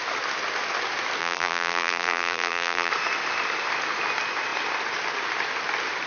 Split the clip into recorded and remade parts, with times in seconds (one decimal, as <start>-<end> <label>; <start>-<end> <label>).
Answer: 0.0-1.2 recorded; 1.2-2.9 remade; 2.9-6.1 recorded